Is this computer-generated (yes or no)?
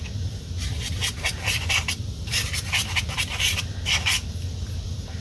yes